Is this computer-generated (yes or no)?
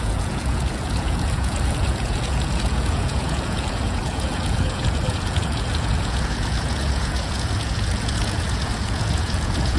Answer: yes